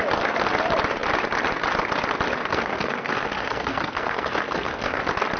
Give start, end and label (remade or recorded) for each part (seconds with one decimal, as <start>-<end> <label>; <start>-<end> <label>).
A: 0.0-2.5 recorded; 2.5-5.0 remade; 5.0-5.4 recorded